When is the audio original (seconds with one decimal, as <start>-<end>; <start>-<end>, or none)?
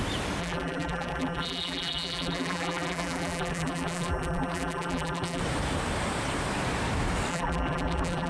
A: 0.0-0.4; 5.4-7.3